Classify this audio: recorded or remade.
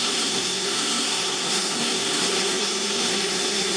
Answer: remade